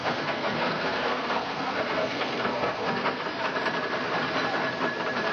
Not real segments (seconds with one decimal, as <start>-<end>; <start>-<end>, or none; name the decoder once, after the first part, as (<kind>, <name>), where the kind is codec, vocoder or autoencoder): 0.0-3.2 (codec, SNAC)